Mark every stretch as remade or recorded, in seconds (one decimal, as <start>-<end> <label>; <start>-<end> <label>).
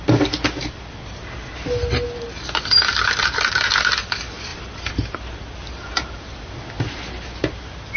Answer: 0.0-8.0 recorded